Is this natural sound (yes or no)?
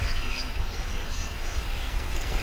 no